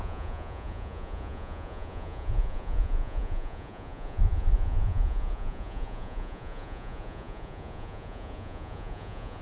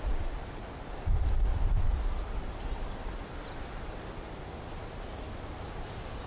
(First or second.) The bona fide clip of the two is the second